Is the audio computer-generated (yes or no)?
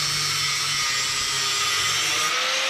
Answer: no